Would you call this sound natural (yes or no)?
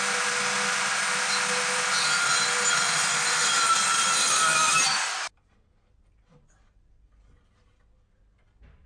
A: yes